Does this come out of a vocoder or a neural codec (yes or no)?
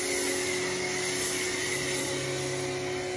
no